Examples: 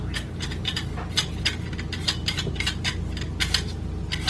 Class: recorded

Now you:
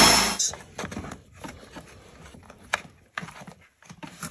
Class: recorded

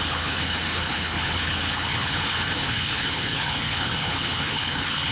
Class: remade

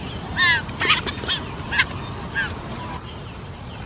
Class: recorded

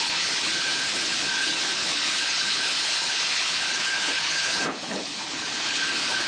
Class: remade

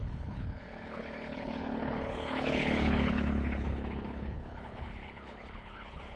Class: remade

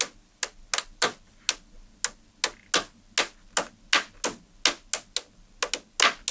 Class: recorded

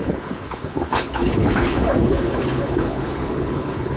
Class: remade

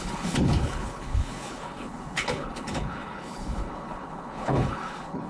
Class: remade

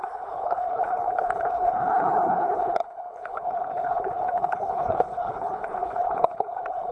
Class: remade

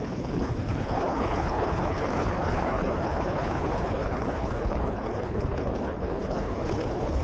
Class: remade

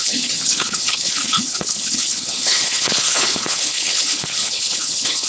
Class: remade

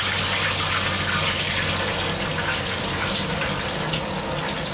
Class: recorded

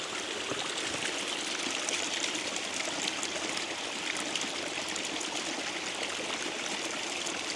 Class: recorded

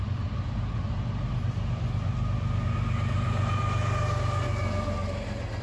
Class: recorded